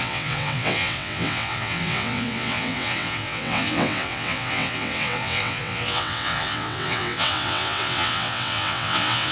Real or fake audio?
fake